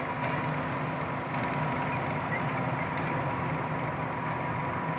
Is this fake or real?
real